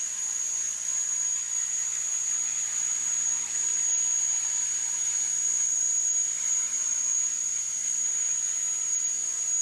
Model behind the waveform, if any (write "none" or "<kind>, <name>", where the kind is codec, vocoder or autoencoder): vocoder, BigVGAN v2